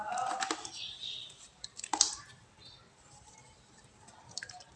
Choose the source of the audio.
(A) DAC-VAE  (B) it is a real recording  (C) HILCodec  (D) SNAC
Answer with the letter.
B